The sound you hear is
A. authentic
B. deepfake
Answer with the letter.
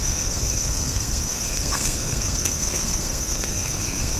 B